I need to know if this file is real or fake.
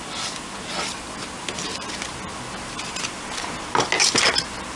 real